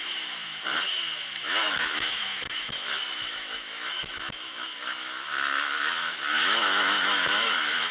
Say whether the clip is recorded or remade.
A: remade